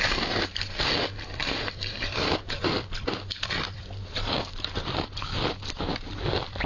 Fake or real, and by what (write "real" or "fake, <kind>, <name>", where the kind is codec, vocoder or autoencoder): fake, vocoder, BigVGAN v2